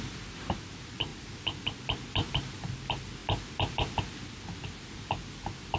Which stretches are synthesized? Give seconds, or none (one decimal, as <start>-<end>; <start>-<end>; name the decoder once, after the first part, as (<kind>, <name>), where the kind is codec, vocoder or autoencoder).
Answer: none